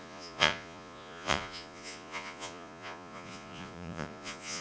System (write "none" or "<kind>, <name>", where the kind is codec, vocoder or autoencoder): vocoder, Vocos